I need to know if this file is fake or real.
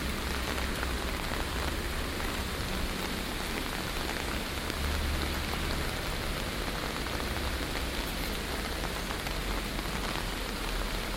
real